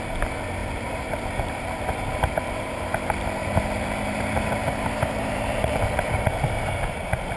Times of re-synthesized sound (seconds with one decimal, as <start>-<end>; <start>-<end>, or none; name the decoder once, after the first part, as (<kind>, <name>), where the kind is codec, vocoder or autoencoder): 0.6-2.8 (vocoder, BigVGAN v2); 3.4-6.0